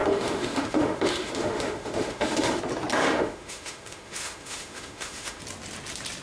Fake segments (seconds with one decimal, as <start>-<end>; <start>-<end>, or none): 0.0-2.6; 3.0-5.4